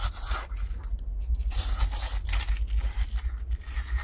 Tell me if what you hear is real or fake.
real